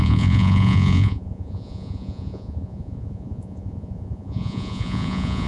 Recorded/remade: remade